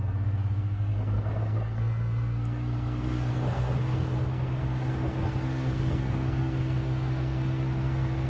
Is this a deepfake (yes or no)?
yes